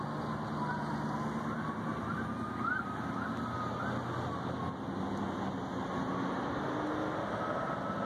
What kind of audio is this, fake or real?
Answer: real